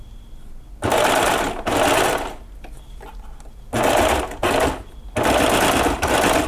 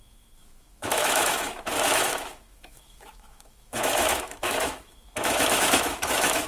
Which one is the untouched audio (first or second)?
first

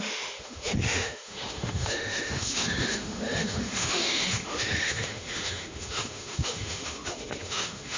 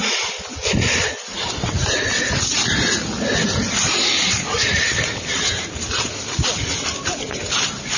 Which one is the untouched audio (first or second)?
second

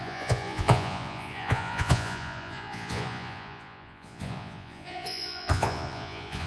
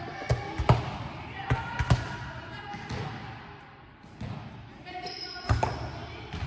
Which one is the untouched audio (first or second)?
second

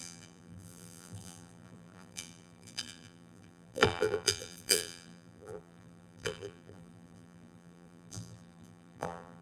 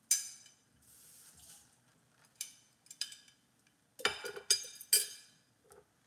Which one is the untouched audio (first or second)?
second